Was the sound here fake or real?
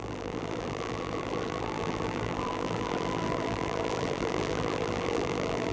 fake